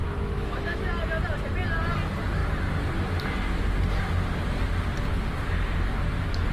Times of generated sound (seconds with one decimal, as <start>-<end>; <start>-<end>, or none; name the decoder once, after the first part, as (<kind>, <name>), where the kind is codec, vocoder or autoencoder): 0.0-0.9 (autoencoder, DAC-VAE)